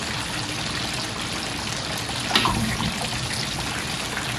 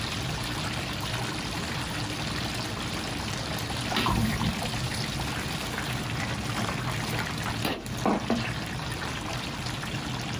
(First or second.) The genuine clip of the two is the first